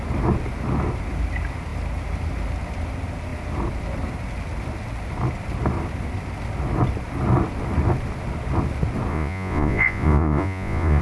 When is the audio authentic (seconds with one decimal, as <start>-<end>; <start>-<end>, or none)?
0.0-9.1